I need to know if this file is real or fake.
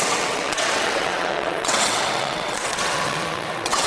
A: fake